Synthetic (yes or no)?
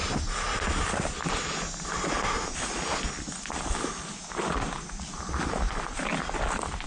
no